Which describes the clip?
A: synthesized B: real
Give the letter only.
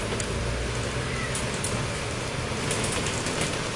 B